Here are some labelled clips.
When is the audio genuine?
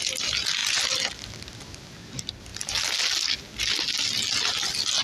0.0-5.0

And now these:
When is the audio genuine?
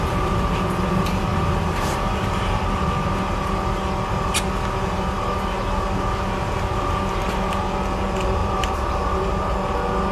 0.0-1.3; 2.1-8.4; 9.3-10.1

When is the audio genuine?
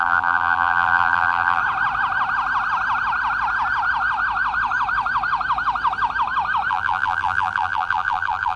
1.6-6.7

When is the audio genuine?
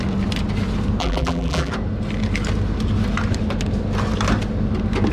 0.0-1.0; 1.7-5.1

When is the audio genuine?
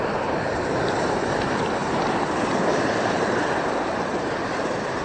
0.0-1.8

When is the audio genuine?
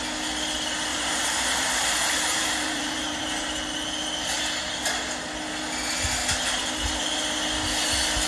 0.0-0.9; 3.3-8.3